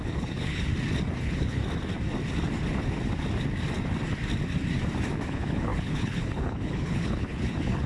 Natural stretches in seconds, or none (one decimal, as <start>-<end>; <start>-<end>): 0.7-1.2; 1.6-5.3